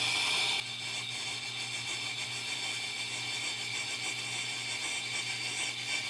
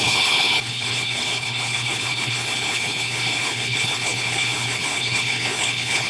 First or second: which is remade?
second